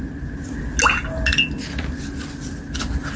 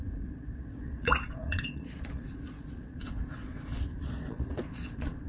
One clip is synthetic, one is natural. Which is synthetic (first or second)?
second